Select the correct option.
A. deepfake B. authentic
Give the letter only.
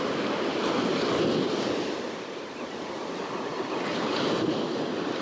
B